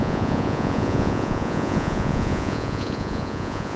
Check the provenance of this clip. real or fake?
fake